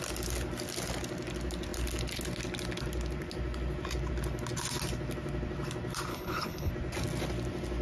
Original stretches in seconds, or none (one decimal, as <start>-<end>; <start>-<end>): 0.0-6.1; 6.7-7.8